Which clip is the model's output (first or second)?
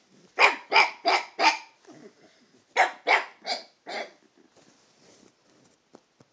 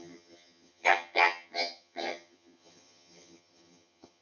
second